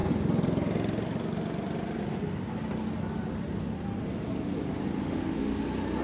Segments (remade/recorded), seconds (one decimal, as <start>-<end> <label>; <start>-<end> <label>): 0.0-5.0 recorded; 5.0-5.6 remade; 5.6-6.0 recorded